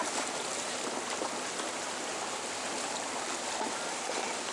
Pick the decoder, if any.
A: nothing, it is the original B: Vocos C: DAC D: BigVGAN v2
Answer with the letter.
A